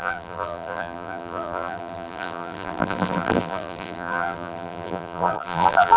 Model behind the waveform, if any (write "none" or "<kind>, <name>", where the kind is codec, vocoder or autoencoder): vocoder, BigVGAN v2